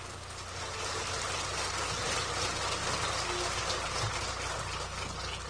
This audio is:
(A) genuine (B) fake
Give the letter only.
A